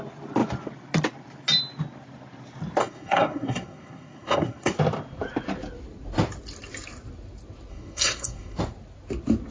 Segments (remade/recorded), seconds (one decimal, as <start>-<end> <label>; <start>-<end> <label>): 0.0-2.8 recorded; 2.8-4.8 remade; 4.8-7.7 recorded; 7.7-8.6 remade; 8.6-9.5 recorded